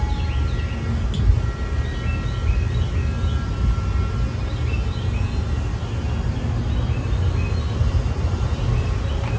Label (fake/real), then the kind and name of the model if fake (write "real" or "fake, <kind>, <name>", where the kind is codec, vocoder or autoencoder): real